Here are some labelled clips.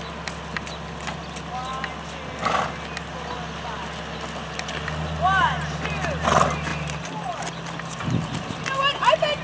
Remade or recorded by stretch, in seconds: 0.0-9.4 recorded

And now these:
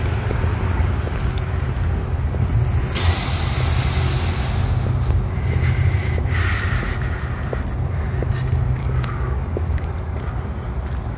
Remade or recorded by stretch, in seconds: 0.0-8.8 recorded; 8.8-10.2 remade; 10.2-11.2 recorded

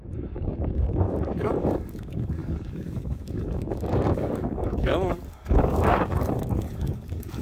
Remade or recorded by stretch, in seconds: 0.0-7.4 remade

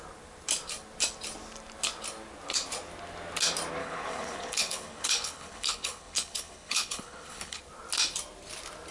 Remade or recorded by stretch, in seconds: 0.0-3.8 recorded; 3.8-7.6 remade; 7.6-8.9 recorded

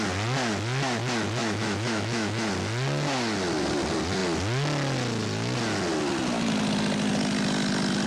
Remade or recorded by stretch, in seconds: 0.0-1.4 recorded; 1.4-2.5 remade; 2.5-8.1 recorded

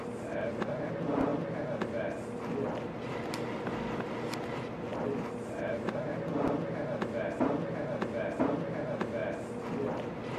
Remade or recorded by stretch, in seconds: 0.0-10.4 recorded

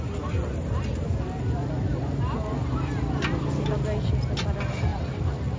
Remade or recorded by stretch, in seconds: 0.0-5.6 recorded

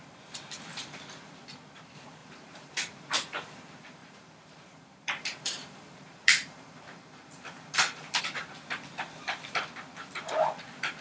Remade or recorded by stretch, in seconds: 0.0-2.2 recorded; 2.2-2.7 remade; 2.7-4.0 recorded; 4.0-8.2 remade; 8.2-11.0 recorded